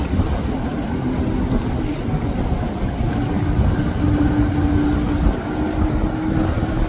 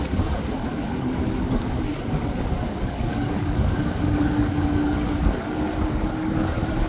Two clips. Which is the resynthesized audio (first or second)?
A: second